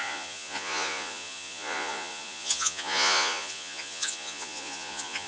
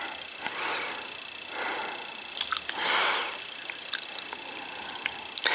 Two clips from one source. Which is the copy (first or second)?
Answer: first